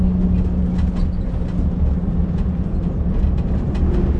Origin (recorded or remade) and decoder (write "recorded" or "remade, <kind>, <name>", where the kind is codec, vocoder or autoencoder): recorded